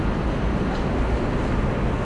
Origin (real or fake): real